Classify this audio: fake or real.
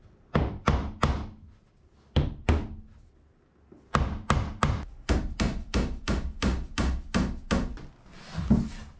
real